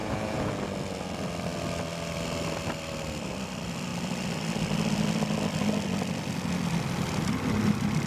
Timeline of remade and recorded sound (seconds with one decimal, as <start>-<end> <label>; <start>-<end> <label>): 0.0-0.5 remade; 0.5-8.1 recorded